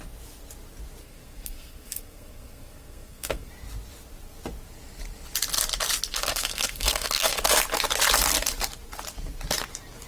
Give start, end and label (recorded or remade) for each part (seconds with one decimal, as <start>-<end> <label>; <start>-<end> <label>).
0.0-1.0 recorded; 1.0-3.5 remade; 3.5-6.1 recorded; 6.1-7.4 remade; 7.4-10.1 recorded